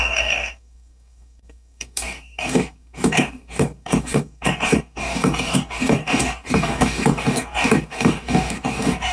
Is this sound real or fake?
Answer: fake